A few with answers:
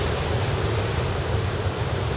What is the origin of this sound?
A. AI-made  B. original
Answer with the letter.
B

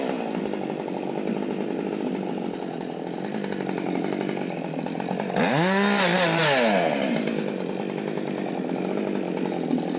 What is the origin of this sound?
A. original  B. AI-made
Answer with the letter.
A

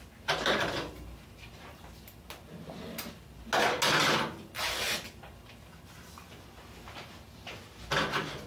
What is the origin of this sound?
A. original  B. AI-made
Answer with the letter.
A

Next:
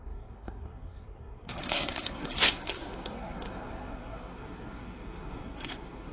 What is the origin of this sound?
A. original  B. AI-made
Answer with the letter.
B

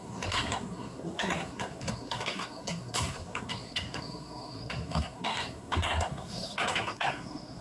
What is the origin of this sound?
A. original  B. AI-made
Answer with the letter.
B